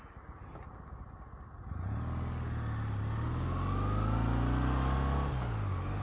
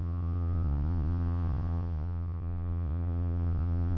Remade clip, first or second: second